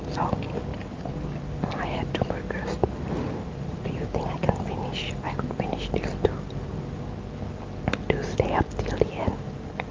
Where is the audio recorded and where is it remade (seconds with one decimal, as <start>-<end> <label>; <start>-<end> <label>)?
0.0-0.7 recorded; 0.7-4.6 remade; 4.6-9.9 recorded